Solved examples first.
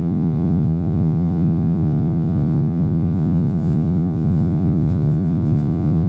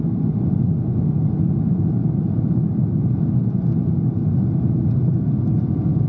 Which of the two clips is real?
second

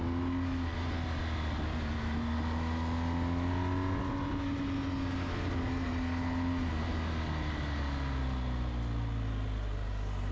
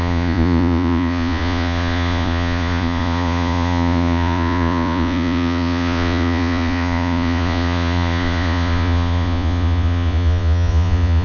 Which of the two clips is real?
first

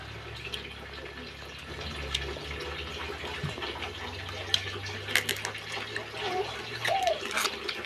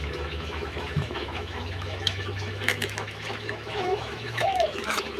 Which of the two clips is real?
first